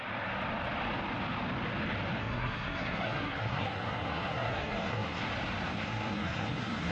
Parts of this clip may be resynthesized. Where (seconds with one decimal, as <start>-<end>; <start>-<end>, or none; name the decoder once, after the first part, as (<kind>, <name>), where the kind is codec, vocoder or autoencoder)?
2.2-5.3 (codec, SNAC); 5.7-6.9